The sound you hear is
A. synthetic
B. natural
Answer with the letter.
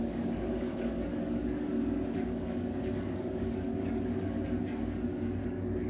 A